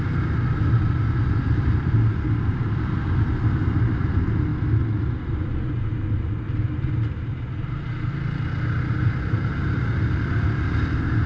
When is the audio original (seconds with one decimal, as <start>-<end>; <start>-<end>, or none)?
0.0-11.3